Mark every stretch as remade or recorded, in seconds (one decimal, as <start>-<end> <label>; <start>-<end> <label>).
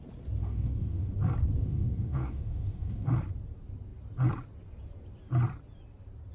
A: 0.0-0.4 recorded; 0.4-1.1 remade; 1.1-1.6 recorded; 1.6-3.1 remade; 3.1-6.3 recorded